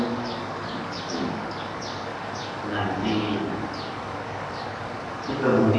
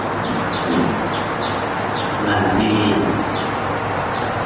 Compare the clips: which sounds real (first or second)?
second